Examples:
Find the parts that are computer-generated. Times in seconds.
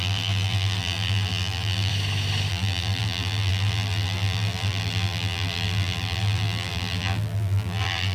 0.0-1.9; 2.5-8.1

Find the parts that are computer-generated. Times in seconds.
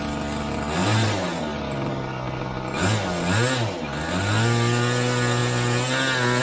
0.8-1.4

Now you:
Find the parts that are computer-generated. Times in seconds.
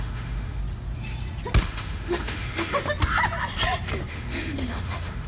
0.0-0.6; 1.6-2.8; 4.1-5.3